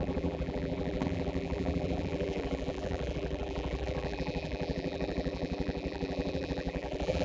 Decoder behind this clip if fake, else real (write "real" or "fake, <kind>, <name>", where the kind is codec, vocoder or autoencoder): fake, vocoder, BigVGAN v2